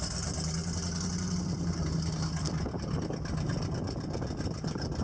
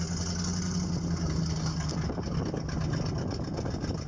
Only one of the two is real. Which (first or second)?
second